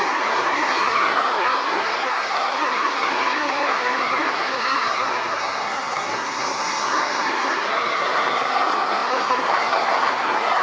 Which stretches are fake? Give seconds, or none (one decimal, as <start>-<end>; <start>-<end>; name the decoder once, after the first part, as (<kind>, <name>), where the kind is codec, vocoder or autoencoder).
0.0-10.6 (codec, SNAC)

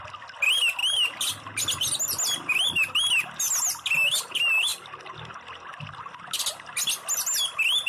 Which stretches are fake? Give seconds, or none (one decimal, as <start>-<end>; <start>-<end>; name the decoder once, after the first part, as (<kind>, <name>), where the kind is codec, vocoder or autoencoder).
none